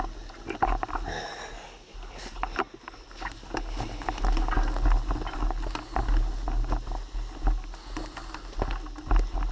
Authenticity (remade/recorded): recorded